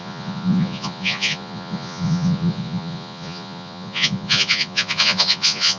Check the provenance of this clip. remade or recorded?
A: remade